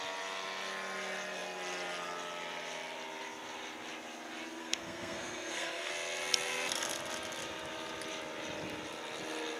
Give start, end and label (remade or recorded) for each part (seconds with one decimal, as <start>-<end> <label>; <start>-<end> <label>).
0.0-4.6 recorded; 4.6-5.9 remade; 5.9-9.6 recorded